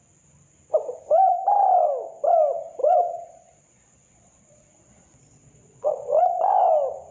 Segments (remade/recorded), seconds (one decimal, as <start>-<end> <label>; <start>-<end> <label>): 0.0-2.8 recorded; 2.8-6.5 remade; 6.5-7.1 recorded